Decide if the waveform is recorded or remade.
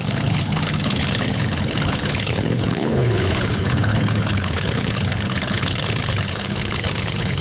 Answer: remade